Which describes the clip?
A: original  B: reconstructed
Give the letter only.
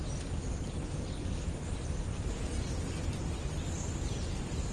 A